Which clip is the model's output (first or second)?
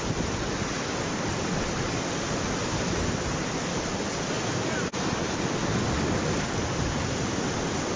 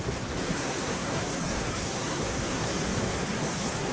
second